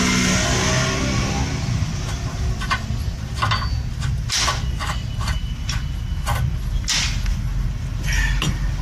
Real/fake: real